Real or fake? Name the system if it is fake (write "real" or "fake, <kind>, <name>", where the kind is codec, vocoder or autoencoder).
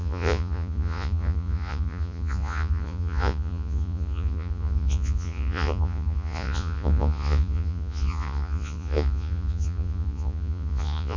fake, vocoder, Vocos